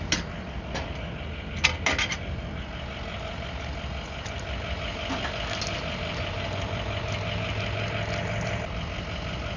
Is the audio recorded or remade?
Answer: recorded